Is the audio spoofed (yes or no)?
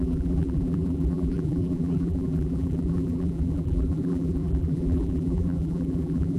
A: yes